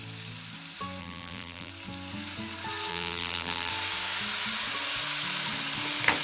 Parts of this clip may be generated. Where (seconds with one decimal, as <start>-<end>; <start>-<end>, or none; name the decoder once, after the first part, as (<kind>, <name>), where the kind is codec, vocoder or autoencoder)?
1.0-1.7 (vocoder, BigVGAN v2); 2.9-3.7